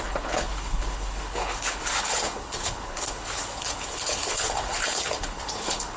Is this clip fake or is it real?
fake